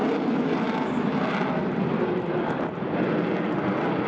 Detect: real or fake real